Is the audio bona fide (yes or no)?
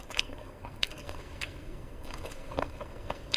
no